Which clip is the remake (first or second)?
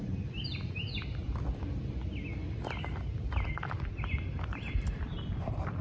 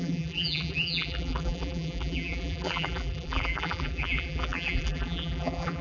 second